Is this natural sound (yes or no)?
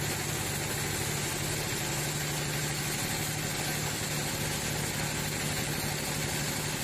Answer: yes